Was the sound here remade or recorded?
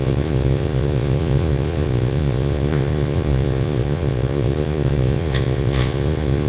remade